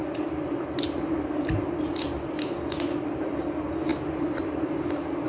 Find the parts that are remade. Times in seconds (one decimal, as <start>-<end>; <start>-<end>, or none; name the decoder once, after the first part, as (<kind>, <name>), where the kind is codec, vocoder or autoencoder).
none